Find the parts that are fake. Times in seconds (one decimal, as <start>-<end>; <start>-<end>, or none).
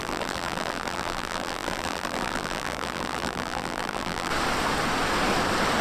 0.0-4.3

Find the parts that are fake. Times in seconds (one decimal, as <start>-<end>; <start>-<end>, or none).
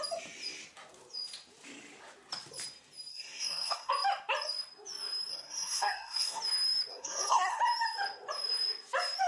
3.1-3.9; 5.3-6.4; 6.9-7.6